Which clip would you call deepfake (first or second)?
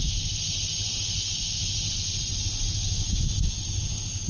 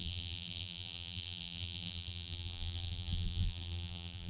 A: second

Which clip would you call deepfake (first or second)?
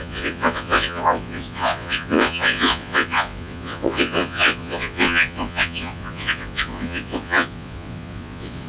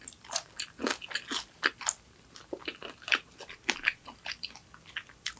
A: first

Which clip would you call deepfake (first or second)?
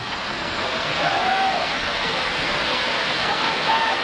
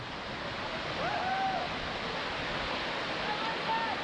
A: first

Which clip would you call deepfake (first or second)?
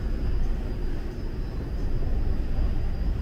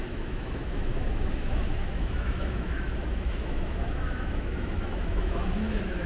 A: second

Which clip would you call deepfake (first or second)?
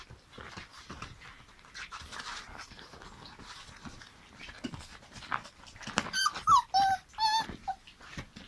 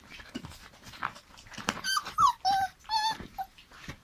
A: second